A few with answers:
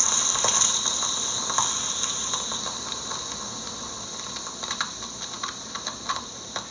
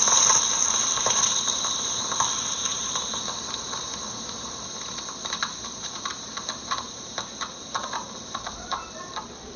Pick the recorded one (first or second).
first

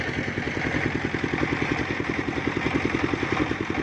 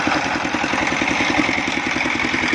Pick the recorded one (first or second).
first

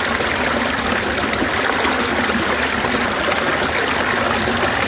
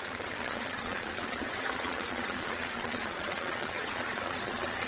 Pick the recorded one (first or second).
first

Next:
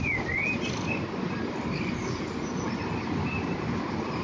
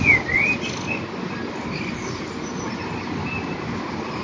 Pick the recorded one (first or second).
second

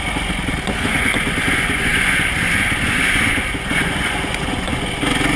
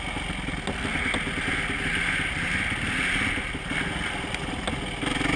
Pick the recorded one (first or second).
second